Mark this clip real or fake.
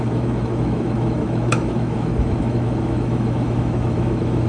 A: fake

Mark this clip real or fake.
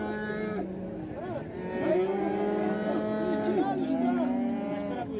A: real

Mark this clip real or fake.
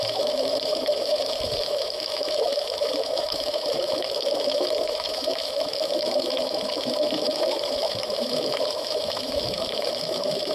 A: fake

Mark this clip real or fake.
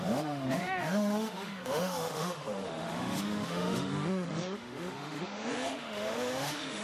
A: fake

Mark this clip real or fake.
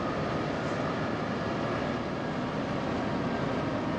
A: real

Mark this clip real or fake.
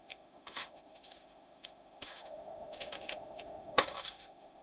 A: fake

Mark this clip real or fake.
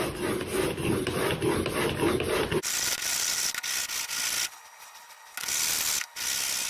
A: real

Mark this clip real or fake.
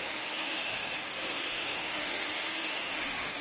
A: fake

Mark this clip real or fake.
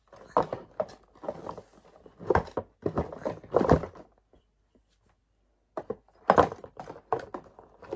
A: real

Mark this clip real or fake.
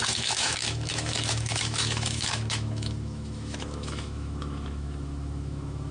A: fake